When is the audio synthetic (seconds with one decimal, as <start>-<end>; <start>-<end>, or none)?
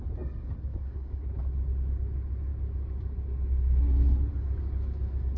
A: 0.7-1.4